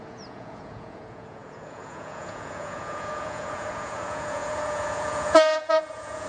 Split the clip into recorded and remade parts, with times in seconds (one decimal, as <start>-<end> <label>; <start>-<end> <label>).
0.0-6.3 remade

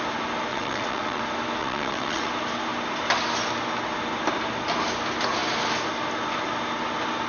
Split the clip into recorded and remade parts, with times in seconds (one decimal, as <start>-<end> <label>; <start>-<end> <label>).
0.0-0.5 recorded; 0.5-1.2 remade; 1.2-1.6 recorded; 1.6-2.3 remade; 2.3-7.3 recorded

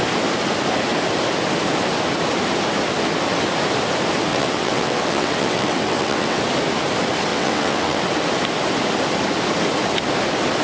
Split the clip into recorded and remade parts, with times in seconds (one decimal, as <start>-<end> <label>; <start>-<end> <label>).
0.0-4.3 recorded; 4.3-6.4 remade; 6.4-7.3 recorded; 7.3-8.0 remade; 8.0-10.6 recorded

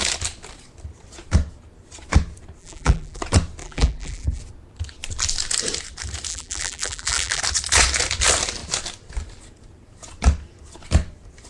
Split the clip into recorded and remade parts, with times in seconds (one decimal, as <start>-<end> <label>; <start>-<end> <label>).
0.0-2.6 recorded; 2.6-3.2 remade; 3.2-3.6 recorded; 3.6-4.4 remade; 4.4-6.3 recorded; 6.3-7.4 remade; 7.4-11.5 recorded